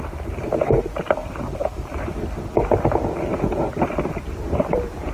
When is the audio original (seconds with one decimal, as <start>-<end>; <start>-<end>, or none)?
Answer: 1.2-4.3